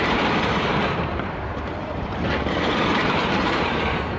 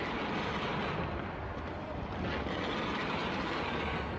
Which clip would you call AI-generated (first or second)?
first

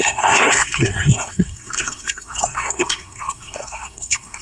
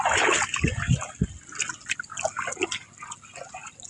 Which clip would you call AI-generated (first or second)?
first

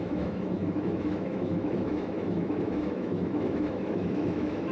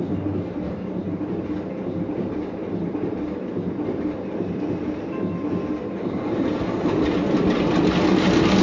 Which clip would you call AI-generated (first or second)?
first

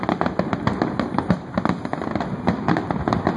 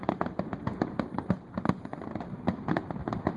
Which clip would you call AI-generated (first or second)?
second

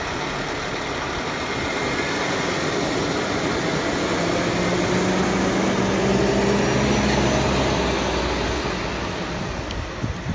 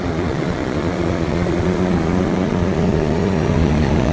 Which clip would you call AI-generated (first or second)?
second